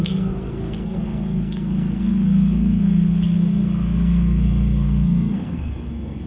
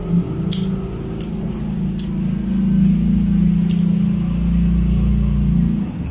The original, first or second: second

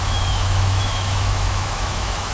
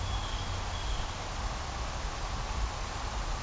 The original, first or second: second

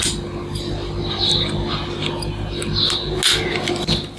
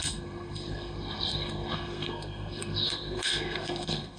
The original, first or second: first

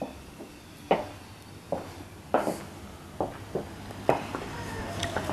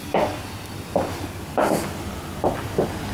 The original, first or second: first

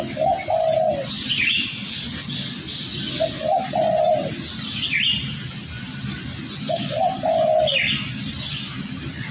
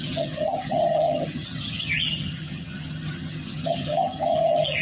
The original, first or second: first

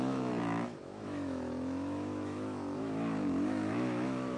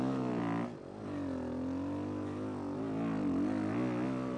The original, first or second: second